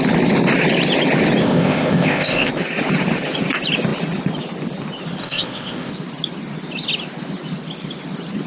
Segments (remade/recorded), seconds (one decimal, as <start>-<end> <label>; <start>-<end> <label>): 0.0-1.4 recorded; 1.4-2.5 remade; 2.5-5.2 recorded; 5.2-5.9 remade; 5.9-8.5 recorded